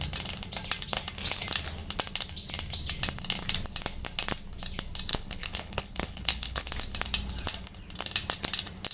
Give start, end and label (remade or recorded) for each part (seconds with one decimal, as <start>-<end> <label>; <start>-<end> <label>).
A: 0.0-5.1 recorded; 5.1-6.7 remade; 6.7-8.9 recorded